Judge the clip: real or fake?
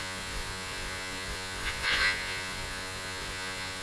fake